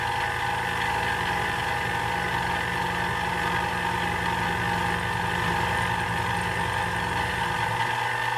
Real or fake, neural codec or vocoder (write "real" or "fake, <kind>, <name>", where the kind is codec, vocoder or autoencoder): real